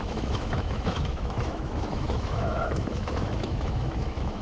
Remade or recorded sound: remade